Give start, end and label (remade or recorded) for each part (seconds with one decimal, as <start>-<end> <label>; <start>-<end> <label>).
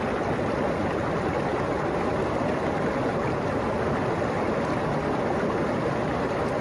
0.0-6.6 recorded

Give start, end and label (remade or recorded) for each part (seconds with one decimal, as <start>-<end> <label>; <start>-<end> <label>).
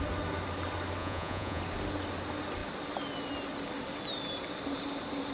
0.0-1.0 recorded; 1.0-1.6 remade; 1.6-5.3 recorded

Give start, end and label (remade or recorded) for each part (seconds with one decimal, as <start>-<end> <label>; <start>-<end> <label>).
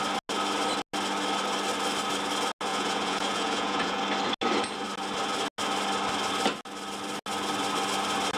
0.0-2.7 recorded; 2.7-4.0 remade; 4.0-8.4 recorded